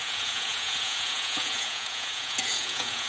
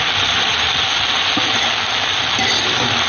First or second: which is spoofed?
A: first